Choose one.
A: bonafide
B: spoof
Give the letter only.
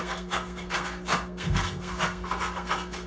B